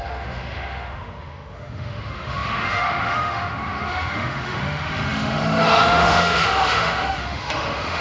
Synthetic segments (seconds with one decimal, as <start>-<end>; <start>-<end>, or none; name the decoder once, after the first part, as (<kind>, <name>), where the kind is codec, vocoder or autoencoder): 0.0-8.0 (autoencoder, DAC-VAE)